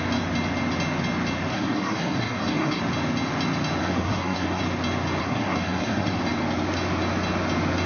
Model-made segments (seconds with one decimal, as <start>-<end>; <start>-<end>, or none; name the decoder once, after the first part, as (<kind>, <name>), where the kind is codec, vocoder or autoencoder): 1.5-2.8 (codec, SNAC); 3.8-4.6; 5.2-6.2